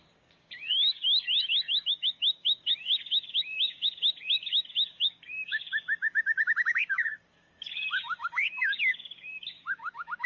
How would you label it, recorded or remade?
remade